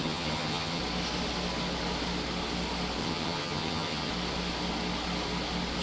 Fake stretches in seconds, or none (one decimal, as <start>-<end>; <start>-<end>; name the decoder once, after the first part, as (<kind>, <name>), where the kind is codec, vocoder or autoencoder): 0.0-0.8 (vocoder, HiFi-GAN); 3.0-4.1